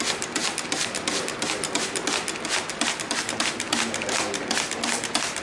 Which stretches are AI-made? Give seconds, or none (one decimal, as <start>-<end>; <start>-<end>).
none